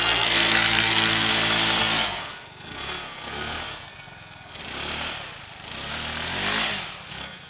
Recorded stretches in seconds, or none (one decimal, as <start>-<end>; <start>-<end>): 1.3-1.8; 4.6-7.1